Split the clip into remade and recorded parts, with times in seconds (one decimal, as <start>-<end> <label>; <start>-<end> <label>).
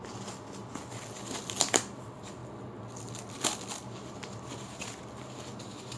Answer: 0.0-6.0 recorded